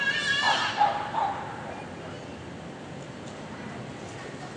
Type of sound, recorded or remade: recorded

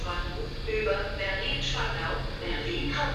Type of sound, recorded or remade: recorded